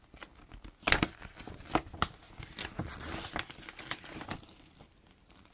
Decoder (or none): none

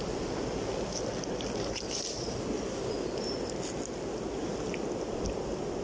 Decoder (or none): none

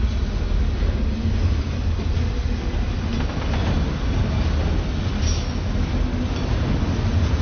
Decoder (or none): none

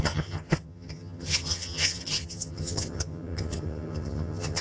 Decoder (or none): vocoder, HiFi-GAN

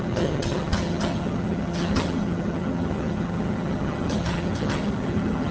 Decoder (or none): vocoder, HiFi-GAN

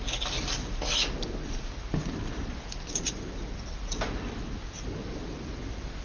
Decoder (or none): none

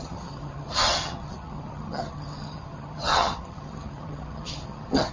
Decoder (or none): vocoder, HiFi-GAN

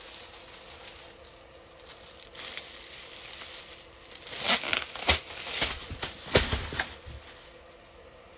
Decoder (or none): none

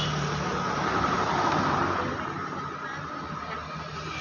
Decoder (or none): none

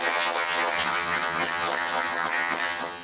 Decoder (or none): vocoder, HiFi-GAN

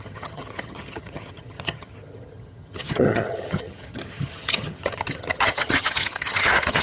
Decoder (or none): vocoder, HiFi-GAN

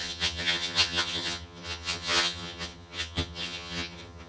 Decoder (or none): vocoder, HiFi-GAN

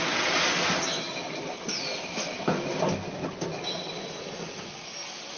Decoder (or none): none